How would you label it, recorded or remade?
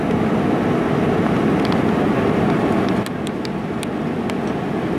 recorded